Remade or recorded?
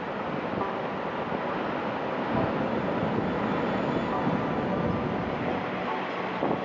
recorded